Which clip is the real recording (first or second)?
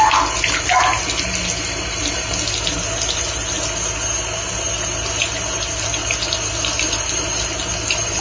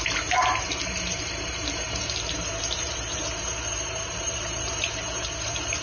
first